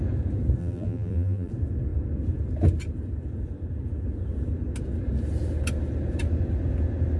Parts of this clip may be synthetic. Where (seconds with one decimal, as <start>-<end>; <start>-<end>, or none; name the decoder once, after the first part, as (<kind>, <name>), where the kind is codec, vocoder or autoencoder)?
0.6-1.5 (vocoder, BigVGAN v2)